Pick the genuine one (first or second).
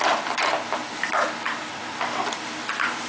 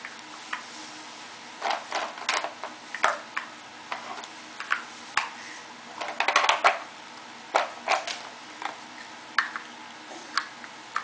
second